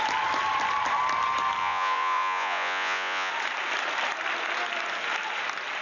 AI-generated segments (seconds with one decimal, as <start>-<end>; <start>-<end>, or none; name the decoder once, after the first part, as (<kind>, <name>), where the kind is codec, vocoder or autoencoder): 1.6-3.3 (vocoder, Vocos)